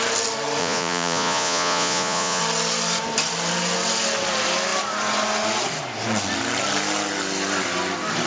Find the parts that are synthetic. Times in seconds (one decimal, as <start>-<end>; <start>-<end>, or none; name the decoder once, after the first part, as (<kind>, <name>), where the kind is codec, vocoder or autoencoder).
0.6-2.4 (vocoder, Vocos)